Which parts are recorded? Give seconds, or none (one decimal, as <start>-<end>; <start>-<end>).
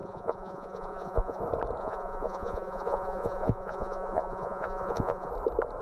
1.4-1.8; 5.3-5.8